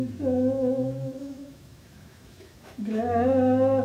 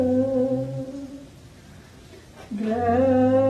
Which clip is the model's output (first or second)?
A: first